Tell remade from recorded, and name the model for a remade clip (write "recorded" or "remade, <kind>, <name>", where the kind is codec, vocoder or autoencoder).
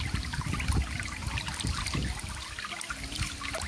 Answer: recorded